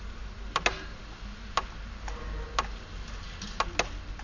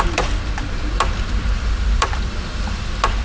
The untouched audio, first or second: first